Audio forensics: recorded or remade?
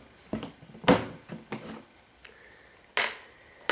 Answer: recorded